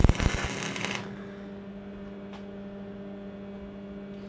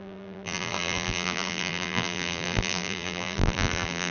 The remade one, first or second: second